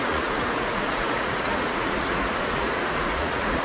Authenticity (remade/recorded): remade